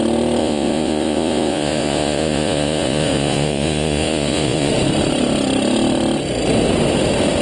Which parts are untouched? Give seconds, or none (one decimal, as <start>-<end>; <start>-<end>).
0.0-0.4; 4.7-7.4